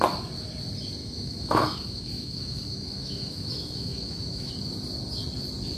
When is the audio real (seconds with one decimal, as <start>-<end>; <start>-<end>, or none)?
0.0-1.0; 4.5-5.8